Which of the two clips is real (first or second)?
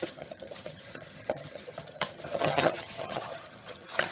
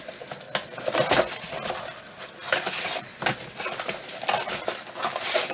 second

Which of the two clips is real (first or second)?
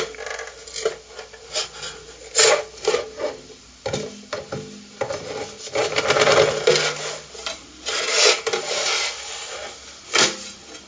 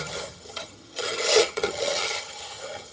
first